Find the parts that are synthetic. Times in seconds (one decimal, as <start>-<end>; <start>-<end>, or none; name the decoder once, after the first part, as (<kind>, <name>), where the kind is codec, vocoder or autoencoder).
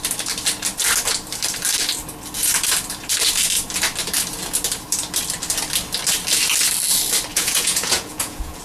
7.3-8.6 (vocoder, Vocos)